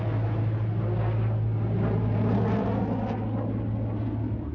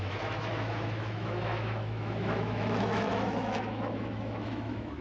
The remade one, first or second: second